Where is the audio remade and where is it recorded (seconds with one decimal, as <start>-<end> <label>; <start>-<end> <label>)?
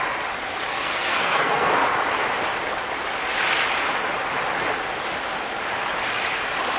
0.0-0.7 recorded; 0.7-1.7 remade; 1.7-6.8 recorded